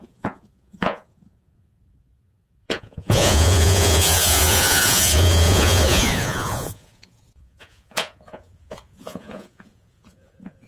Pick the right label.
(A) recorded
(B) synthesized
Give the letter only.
B